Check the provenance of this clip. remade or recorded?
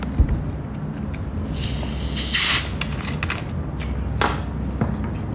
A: recorded